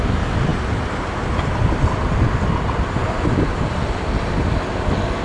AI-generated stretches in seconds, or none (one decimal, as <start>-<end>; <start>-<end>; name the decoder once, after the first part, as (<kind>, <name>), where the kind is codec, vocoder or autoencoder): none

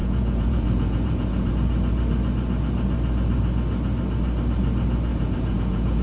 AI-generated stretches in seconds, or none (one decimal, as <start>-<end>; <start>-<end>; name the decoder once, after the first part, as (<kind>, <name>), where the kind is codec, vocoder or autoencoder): 0.0-1.5 (vocoder, Vocos); 5.1-6.0

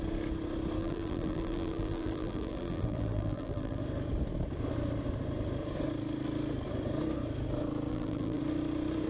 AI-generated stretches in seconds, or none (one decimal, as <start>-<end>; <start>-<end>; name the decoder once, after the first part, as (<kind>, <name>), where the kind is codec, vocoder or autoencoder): 0.8-3.8 (vocoder, BigVGAN v2); 7.9-8.4